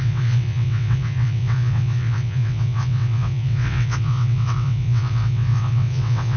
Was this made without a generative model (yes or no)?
no